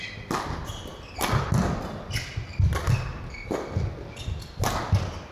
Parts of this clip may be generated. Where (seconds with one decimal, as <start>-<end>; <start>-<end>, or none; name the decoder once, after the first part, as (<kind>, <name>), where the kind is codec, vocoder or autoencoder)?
none